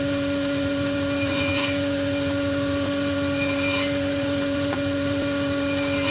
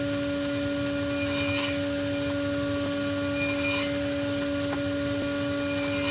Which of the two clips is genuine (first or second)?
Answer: second